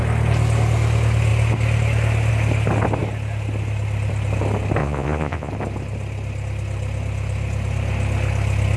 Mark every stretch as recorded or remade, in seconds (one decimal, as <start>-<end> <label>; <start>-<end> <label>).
0.0-4.8 recorded; 4.8-5.5 remade; 5.5-8.8 recorded